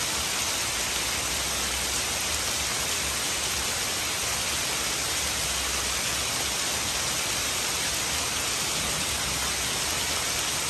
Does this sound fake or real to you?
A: real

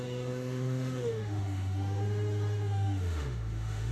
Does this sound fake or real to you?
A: fake